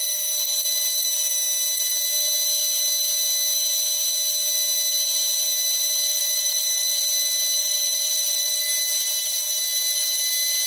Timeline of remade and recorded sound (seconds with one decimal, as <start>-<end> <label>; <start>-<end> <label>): 0.0-6.2 recorded; 6.2-7.0 remade; 7.0-7.6 recorded; 7.6-8.6 remade; 8.6-10.7 recorded